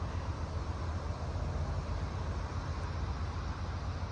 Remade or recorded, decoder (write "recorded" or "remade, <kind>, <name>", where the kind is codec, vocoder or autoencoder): recorded